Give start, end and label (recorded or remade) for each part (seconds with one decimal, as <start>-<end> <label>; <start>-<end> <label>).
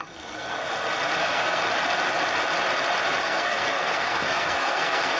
0.0-0.6 remade; 0.6-1.2 recorded; 1.2-1.6 remade; 1.6-3.2 recorded; 3.2-5.2 remade